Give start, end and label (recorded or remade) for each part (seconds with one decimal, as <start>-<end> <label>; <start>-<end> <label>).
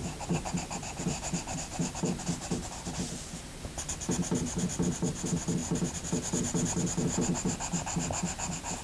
0.0-8.8 recorded